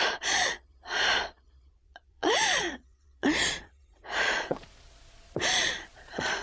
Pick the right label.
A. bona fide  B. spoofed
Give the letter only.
B